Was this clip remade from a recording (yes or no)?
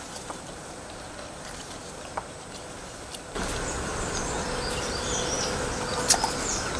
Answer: yes